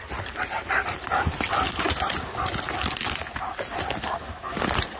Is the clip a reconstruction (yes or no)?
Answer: no